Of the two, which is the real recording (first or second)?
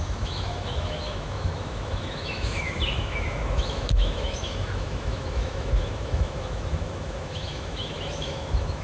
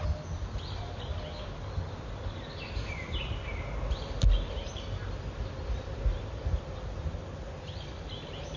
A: second